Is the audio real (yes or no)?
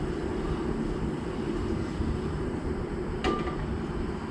yes